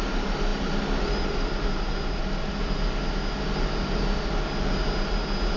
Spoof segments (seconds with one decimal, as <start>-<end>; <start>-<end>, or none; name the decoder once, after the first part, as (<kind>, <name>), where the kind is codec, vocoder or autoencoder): none